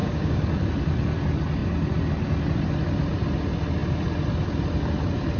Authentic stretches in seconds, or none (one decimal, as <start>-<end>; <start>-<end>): 0.6-5.4